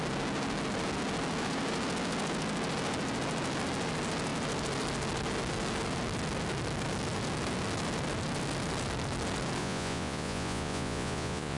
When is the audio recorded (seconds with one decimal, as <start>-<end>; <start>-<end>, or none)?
0.0-9.6